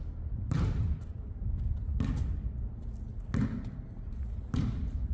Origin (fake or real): real